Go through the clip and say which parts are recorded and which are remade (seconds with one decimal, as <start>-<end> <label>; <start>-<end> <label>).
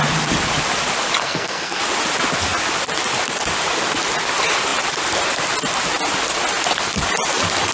0.0-1.2 recorded; 1.2-1.8 remade; 1.8-7.7 recorded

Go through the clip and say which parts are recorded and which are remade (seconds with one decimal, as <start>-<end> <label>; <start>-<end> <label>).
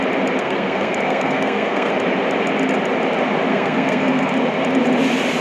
0.0-0.4 recorded; 0.4-1.9 remade; 1.9-3.5 recorded; 3.5-4.3 remade; 4.3-5.4 recorded